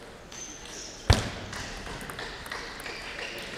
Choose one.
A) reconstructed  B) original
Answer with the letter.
B